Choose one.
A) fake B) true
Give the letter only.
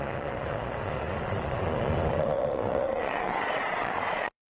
A